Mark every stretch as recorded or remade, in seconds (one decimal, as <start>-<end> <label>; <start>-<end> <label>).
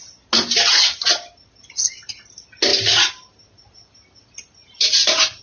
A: 0.0-4.6 recorded; 4.6-5.4 remade